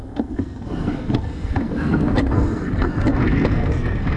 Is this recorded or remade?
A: remade